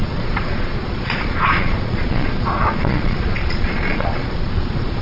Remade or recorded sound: remade